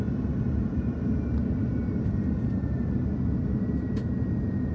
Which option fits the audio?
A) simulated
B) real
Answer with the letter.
B